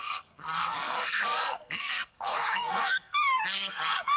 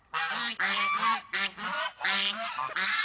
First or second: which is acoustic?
second